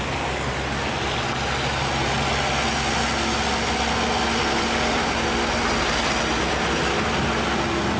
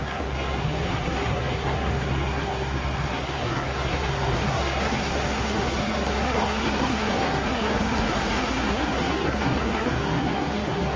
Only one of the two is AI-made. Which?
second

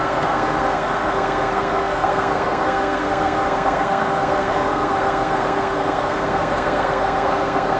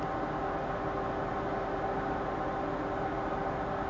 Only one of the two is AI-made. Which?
first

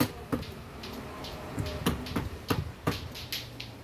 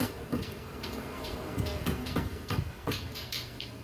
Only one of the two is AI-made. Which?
second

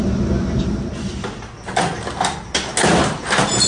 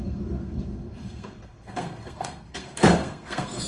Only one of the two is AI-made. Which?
second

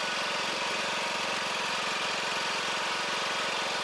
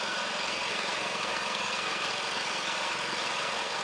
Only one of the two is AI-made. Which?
second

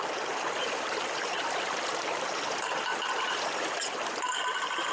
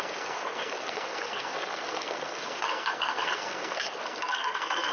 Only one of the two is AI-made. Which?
second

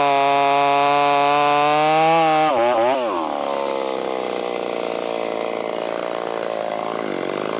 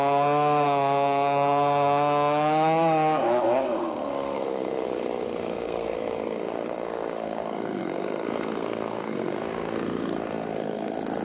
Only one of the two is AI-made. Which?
second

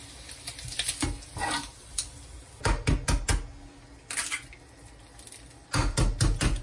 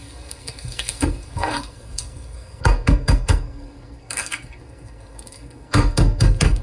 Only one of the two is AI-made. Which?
second